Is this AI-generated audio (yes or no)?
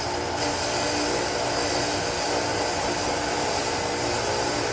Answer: no